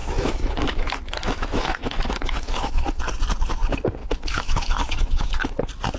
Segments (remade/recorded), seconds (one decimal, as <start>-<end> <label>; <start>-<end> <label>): 0.0-3.0 remade; 3.0-4.0 recorded; 4.0-5.6 remade; 5.6-6.0 recorded